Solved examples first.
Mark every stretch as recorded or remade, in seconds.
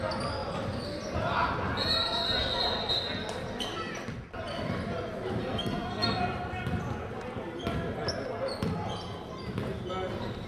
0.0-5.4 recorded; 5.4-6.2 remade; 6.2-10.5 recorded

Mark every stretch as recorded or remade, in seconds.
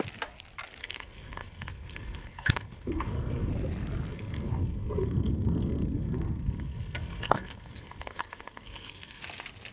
0.0-0.8 recorded; 0.8-3.5 remade; 3.5-4.1 recorded; 4.1-9.2 remade; 9.2-9.7 recorded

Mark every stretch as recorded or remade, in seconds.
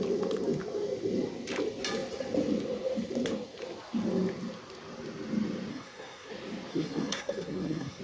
0.0-5.7 recorded; 5.7-6.3 remade; 6.3-6.7 recorded; 6.7-8.0 remade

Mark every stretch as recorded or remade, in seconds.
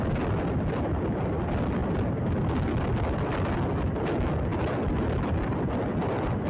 0.0-6.5 recorded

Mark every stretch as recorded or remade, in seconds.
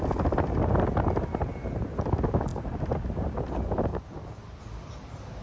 0.0-5.4 recorded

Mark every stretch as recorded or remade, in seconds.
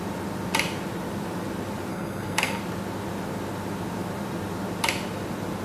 0.0-1.9 recorded; 1.9-2.6 remade; 2.6-5.6 recorded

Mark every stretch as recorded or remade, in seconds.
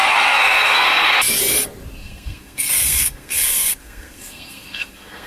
0.0-1.2 remade; 1.2-2.0 recorded; 2.0-5.3 remade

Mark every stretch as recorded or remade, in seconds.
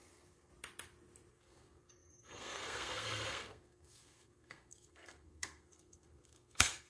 0.0-0.5 remade; 0.5-1.3 recorded; 1.3-6.9 remade